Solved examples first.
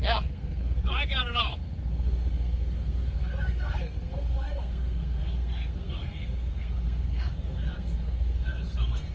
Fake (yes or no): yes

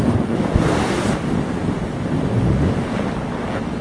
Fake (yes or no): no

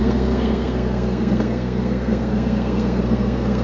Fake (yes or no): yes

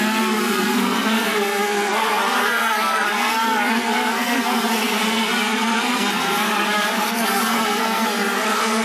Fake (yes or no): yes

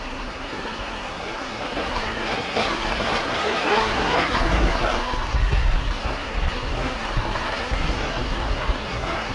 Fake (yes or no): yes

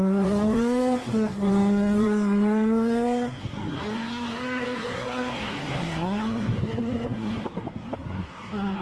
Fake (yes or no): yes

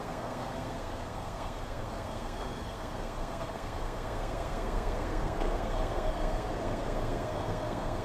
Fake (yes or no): yes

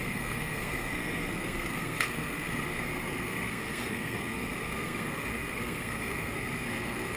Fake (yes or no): yes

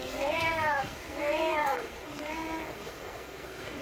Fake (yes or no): yes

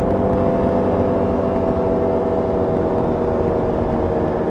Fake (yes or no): no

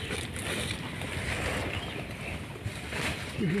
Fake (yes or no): no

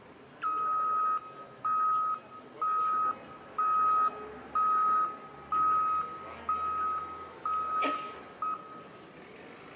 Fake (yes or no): no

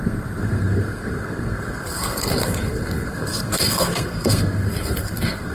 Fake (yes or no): yes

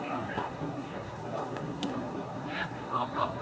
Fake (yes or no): yes